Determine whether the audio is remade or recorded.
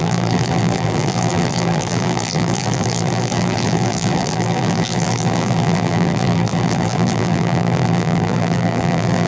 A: remade